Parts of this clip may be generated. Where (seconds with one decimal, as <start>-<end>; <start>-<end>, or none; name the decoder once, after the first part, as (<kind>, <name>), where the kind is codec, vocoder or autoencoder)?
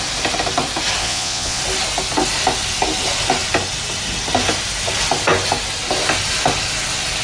1.0-1.6 (vocoder, Vocos)